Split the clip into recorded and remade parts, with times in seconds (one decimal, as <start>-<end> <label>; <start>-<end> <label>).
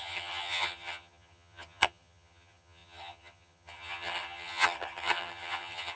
0.0-6.0 remade